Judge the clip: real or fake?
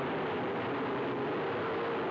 real